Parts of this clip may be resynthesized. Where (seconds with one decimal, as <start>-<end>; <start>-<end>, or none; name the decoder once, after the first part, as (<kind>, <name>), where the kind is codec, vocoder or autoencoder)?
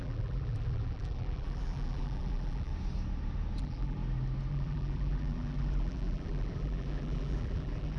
0.0-2.7 (vocoder, BigVGAN v2); 3.6-4.0; 4.5-8.0